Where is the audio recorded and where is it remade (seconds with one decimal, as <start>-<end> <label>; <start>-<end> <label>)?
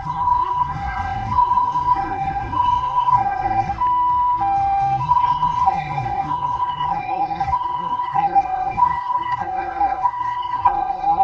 0.0-3.7 remade; 3.7-5.0 recorded; 5.0-11.2 remade